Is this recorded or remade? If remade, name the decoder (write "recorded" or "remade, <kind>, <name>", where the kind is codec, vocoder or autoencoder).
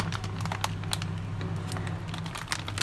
recorded